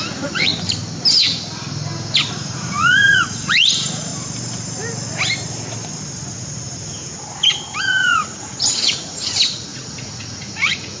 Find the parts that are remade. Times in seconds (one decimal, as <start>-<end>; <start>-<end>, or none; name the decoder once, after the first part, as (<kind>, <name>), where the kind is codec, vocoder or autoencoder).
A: 0.0-0.5 (vocoder, Vocos); 2.3-4.1; 7.8-11.0